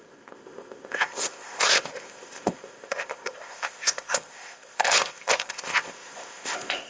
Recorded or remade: remade